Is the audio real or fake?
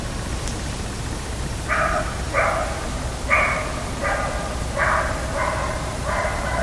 real